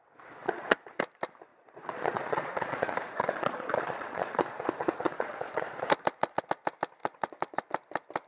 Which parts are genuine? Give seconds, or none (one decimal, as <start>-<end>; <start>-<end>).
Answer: 0.0-0.4; 0.9-1.5; 6.4-7.0; 7.6-8.3